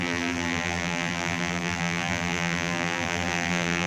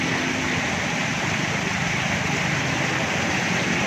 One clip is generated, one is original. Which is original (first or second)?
second